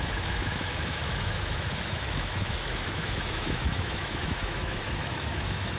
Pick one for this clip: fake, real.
fake